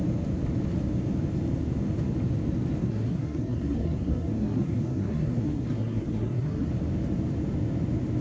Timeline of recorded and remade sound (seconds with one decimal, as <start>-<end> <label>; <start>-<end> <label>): 0.0-2.8 recorded; 2.8-6.7 remade; 6.7-8.2 recorded